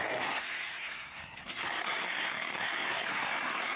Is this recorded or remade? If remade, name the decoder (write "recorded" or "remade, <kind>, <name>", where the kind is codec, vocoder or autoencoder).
remade, codec, SNAC